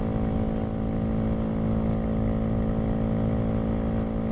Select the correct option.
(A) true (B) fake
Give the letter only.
A